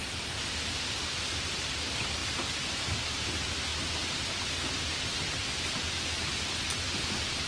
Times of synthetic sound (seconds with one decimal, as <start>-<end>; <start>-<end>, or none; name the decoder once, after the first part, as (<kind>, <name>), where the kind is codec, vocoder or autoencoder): none